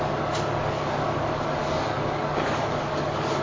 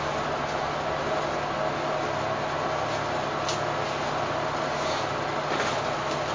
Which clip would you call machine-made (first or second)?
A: first